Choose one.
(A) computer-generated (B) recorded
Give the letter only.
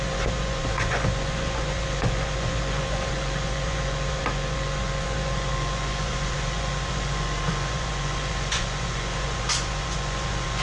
A